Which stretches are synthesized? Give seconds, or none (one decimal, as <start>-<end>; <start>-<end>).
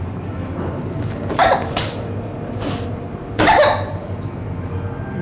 1.3-4.1